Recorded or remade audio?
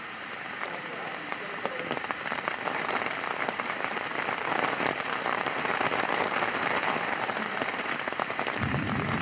remade